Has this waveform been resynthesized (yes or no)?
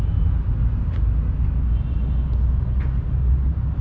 no